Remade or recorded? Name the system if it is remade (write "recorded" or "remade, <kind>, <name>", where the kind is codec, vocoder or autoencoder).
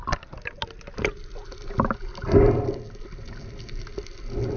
recorded